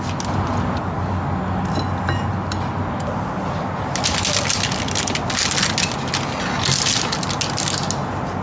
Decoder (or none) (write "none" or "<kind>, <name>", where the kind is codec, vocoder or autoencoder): none